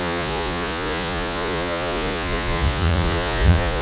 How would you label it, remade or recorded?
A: remade